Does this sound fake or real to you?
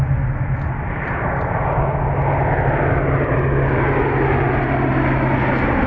real